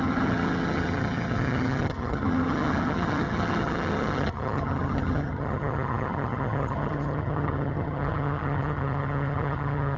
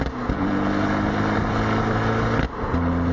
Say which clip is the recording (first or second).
second